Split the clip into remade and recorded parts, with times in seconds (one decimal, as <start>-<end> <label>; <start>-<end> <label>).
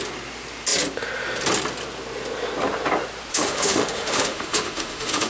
0.0-3.3 recorded; 3.3-5.3 remade